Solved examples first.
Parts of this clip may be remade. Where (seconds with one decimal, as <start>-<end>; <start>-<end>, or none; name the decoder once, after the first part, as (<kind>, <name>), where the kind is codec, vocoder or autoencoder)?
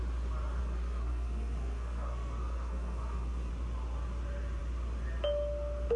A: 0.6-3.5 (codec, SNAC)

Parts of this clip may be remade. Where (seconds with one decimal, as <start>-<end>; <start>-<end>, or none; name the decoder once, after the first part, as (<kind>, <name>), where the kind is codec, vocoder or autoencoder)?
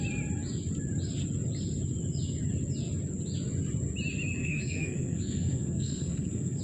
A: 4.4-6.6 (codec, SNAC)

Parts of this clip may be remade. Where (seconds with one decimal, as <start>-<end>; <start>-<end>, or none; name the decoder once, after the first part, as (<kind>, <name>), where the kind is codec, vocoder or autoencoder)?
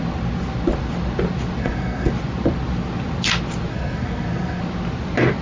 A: 1.6-2.1 (codec, SNAC); 3.7-4.6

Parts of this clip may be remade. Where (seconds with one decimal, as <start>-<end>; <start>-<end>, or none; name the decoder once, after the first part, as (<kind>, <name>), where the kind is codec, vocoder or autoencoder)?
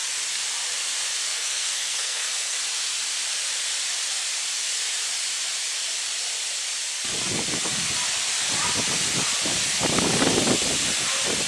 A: 1.3-2.6 (codec, SNAC)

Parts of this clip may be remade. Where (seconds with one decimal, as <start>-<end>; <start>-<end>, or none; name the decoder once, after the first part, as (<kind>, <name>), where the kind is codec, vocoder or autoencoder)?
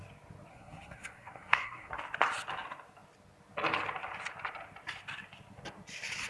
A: 0.5-1.9 (codec, SNAC)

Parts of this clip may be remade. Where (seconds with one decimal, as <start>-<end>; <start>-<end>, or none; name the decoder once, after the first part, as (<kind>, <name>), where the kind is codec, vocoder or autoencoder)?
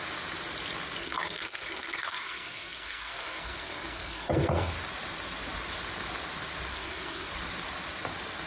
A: 1.0-4.7 (codec, SNAC); 6.7-7.3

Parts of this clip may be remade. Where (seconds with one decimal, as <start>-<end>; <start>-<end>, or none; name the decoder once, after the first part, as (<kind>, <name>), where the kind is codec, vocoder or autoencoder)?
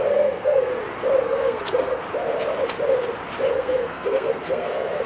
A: 0.0-0.7 (codec, SNAC); 1.2-2.0; 3.5-5.1